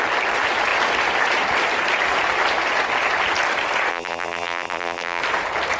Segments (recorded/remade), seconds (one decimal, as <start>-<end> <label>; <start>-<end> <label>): 0.0-3.9 recorded; 3.9-5.2 remade; 5.2-5.8 recorded